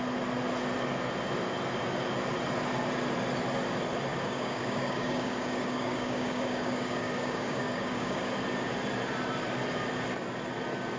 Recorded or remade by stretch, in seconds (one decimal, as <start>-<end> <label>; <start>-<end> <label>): 0.0-4.1 recorded; 4.1-8.2 remade; 8.2-11.0 recorded